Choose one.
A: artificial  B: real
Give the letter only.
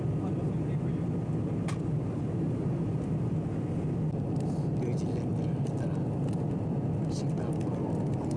B